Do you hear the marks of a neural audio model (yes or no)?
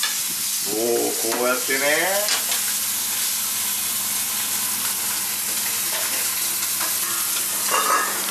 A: no